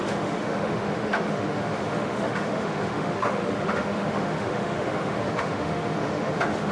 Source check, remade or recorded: remade